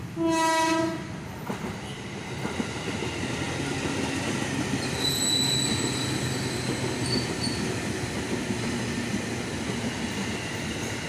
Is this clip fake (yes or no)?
no